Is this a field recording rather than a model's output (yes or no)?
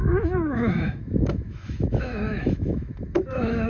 no